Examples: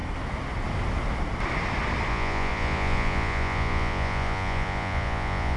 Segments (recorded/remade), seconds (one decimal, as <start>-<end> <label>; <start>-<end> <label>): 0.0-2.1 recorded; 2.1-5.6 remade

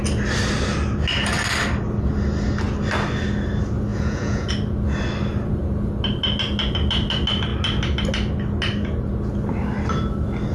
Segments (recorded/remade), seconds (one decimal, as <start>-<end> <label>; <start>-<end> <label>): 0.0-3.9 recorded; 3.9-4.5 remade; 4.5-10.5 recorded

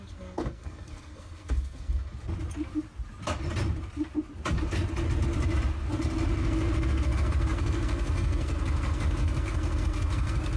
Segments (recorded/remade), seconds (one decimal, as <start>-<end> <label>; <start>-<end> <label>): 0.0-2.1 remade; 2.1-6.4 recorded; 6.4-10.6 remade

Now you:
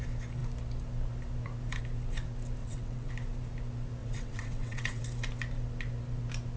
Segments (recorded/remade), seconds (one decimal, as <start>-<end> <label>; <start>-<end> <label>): 0.0-2.6 recorded; 2.6-3.1 remade; 3.1-4.0 recorded; 4.0-5.0 remade; 5.0-6.6 recorded